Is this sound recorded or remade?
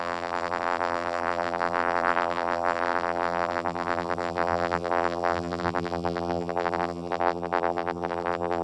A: remade